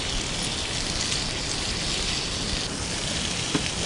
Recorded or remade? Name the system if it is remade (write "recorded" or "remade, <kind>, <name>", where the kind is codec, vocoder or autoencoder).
recorded